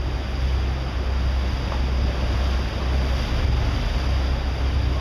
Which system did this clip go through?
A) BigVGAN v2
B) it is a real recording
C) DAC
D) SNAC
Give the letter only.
B